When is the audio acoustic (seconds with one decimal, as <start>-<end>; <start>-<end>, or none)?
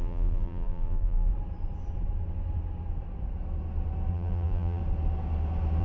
1.3-4.1; 4.8-5.8